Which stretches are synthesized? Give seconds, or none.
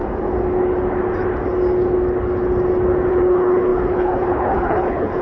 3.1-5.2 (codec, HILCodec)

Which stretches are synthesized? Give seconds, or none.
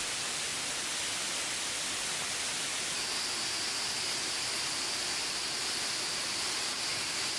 none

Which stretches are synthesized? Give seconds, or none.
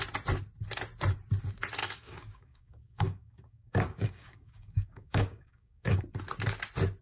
1.8-6.0 (codec, DAC)